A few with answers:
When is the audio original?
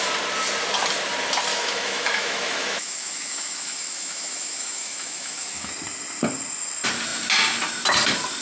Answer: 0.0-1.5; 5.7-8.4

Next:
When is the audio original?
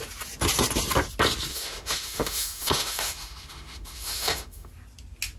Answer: 0.0-1.5; 4.7-5.4